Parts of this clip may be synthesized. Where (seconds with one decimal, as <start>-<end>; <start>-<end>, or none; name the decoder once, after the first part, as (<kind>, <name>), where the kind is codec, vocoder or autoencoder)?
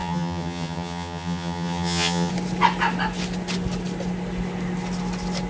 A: 0.0-2.3 (vocoder, HiFi-GAN)